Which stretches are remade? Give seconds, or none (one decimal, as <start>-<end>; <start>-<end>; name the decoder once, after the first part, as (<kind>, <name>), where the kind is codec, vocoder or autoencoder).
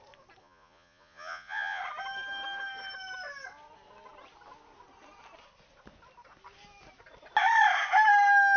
0.4-1.8 (vocoder, Vocos)